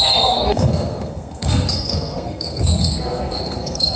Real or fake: fake